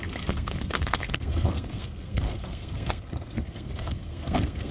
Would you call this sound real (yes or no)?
no